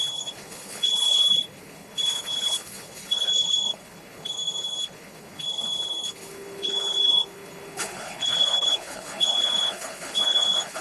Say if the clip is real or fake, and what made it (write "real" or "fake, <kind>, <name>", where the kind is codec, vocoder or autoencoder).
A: fake, codec, HILCodec